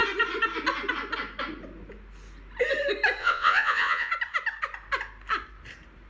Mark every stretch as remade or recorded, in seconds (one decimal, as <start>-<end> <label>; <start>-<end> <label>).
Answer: 0.0-3.2 recorded; 3.2-4.1 remade; 4.1-6.1 recorded

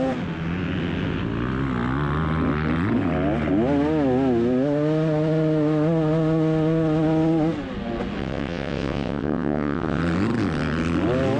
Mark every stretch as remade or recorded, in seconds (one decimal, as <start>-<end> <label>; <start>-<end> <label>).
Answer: 0.0-8.2 recorded; 8.2-10.0 remade; 10.0-11.4 recorded

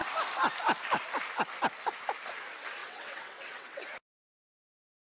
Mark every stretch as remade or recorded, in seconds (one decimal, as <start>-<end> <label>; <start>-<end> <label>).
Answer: 0.0-2.8 recorded; 2.8-3.9 remade; 3.9-5.1 recorded

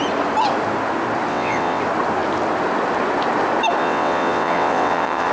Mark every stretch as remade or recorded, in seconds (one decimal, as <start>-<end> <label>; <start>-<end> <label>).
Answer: 0.0-1.3 recorded; 1.3-1.8 remade; 1.8-3.8 recorded; 3.8-5.3 remade

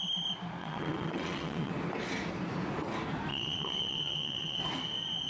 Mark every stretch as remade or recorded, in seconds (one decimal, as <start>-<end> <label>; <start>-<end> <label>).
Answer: 0.0-0.6 recorded; 0.6-1.7 remade; 1.7-3.3 recorded; 3.3-4.6 remade; 4.6-5.3 recorded

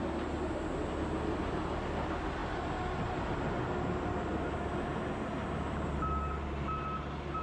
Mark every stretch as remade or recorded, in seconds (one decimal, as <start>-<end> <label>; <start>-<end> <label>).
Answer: 0.0-7.4 recorded

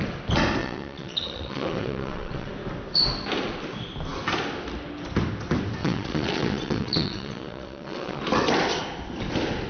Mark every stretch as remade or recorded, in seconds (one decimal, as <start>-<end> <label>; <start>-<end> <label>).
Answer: 0.0-0.6 recorded; 0.6-2.5 remade; 2.5-5.8 recorded; 5.8-8.2 remade; 8.2-9.7 recorded